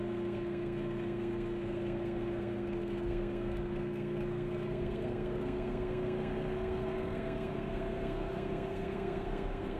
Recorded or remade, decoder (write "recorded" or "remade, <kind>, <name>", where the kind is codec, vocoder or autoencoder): remade, codec, SNAC